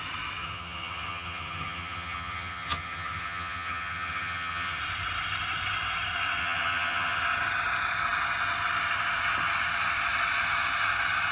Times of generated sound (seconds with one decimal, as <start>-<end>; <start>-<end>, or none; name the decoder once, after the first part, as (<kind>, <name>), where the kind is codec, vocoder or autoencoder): 0.4-4.8 (vocoder, HiFi-GAN); 6.4-7.2